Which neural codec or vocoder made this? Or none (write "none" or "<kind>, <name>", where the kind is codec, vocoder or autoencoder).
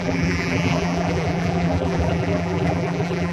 vocoder, BigVGAN v2